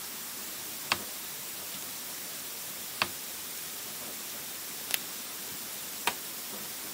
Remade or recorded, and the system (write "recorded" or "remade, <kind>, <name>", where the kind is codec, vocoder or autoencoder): recorded